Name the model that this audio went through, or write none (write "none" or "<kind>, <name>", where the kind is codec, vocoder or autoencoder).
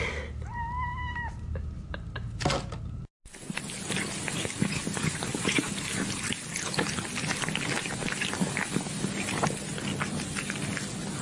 none